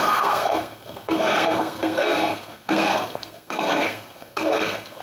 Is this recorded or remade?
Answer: remade